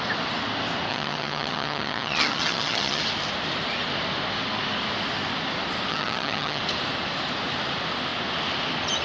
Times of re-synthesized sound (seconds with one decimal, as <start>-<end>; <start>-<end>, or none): 0.9-3.0; 5.9-6.6

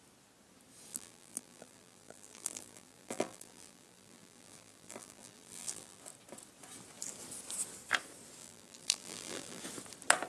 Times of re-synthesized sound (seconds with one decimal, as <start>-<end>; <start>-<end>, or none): 0.9-6.0; 8.4-9.6

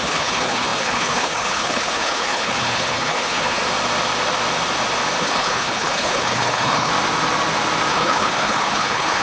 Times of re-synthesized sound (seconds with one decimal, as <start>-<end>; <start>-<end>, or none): 0.0-3.6; 5.2-6.9; 7.9-9.2

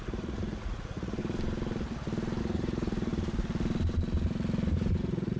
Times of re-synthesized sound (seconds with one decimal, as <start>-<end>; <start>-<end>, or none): 0.0-1.2; 2.4-3.1; 5.0-5.4

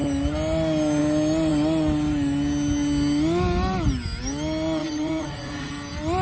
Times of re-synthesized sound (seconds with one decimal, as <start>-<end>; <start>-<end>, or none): 4.8-5.7